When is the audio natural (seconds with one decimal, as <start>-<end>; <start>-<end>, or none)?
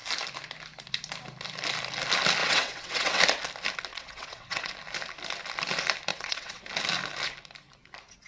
0.0-2.4; 3.2-3.9; 4.7-6.1; 6.6-8.3